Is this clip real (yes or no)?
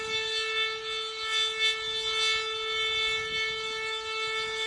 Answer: yes